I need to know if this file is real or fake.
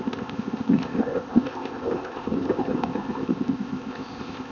fake